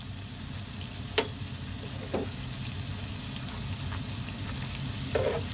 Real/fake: real